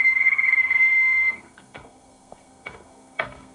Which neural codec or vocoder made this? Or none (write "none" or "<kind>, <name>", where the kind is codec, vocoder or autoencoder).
codec, SNAC